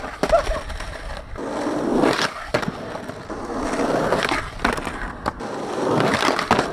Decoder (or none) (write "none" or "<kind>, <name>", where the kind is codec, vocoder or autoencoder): none